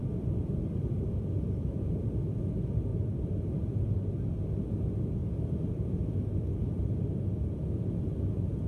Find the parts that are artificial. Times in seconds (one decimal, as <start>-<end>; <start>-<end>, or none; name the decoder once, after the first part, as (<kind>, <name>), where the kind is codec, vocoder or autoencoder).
0.0-1.4 (vocoder, BigVGAN v2); 2.9-3.4; 5.2-6.8